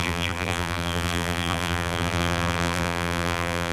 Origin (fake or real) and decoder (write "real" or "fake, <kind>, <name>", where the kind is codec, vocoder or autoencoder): fake, vocoder, BigVGAN v2